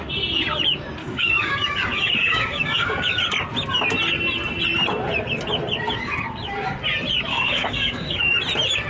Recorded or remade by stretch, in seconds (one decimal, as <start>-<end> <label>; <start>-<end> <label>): 0.0-1.0 recorded; 1.0-3.2 remade; 3.2-7.3 recorded; 7.3-8.2 remade; 8.2-8.9 recorded